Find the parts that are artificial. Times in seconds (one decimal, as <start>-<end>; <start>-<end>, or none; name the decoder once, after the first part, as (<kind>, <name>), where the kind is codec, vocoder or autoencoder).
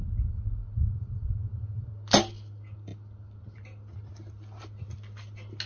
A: none